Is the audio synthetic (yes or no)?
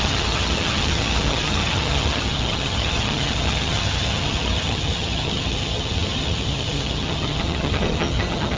yes